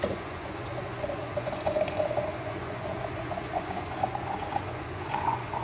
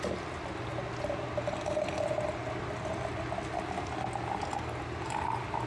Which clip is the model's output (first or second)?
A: first